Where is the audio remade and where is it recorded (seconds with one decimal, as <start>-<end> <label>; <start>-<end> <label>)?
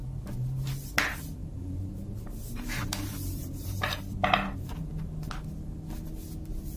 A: 0.0-1.4 recorded; 1.4-3.8 remade; 3.8-6.8 recorded